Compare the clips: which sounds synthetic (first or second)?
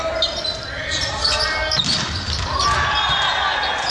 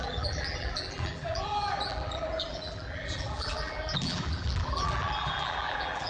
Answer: second